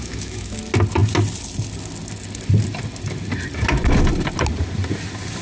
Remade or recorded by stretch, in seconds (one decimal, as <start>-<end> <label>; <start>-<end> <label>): 0.0-0.6 remade; 0.6-5.4 recorded

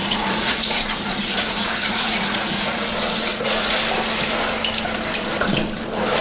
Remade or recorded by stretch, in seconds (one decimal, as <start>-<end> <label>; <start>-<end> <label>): 0.0-2.9 remade; 2.9-3.3 recorded; 3.3-3.8 remade; 3.8-6.2 recorded